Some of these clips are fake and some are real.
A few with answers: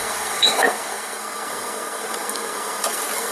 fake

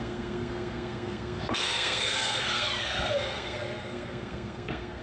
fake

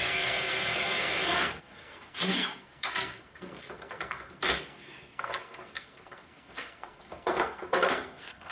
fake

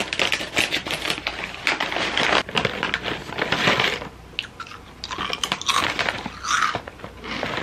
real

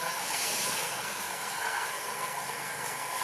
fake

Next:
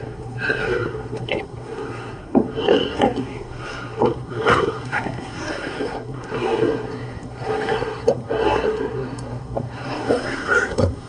fake